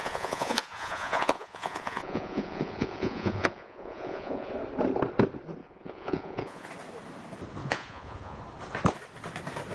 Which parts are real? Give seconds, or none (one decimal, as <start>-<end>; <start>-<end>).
4.5-5.6; 6.7-7.6; 8.4-9.7